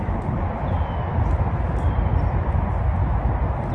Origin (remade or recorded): recorded